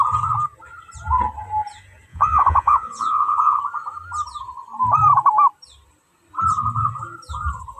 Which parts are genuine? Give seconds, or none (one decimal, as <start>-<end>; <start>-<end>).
0.0-2.1; 3.6-7.8